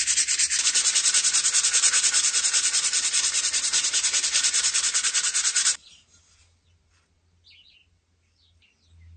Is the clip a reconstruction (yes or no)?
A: no